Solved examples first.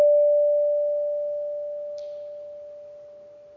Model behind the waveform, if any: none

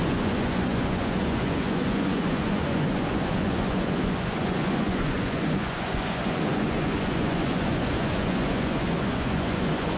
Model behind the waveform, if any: vocoder, Vocos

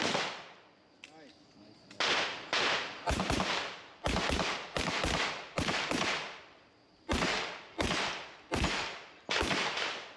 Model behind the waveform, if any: none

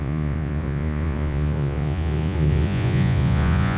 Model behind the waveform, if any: vocoder, Vocos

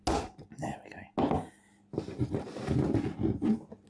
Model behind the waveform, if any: none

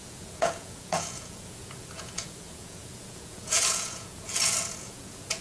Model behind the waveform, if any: vocoder, Vocos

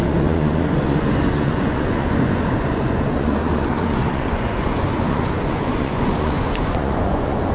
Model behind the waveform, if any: vocoder, Vocos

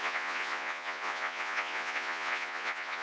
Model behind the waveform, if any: vocoder, Vocos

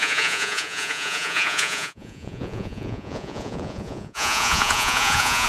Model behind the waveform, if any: vocoder, Vocos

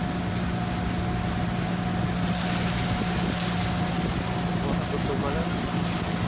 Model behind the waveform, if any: none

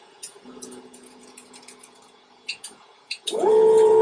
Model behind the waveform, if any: vocoder, Vocos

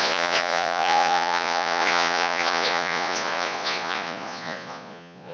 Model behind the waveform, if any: vocoder, Vocos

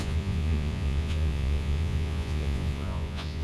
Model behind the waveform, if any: vocoder, Vocos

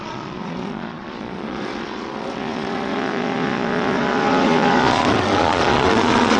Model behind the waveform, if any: vocoder, Vocos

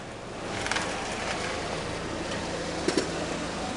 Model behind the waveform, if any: none